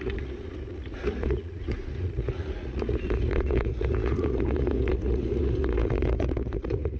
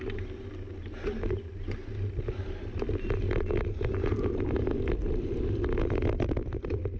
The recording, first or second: second